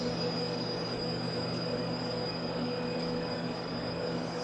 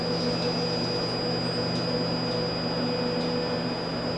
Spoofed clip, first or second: first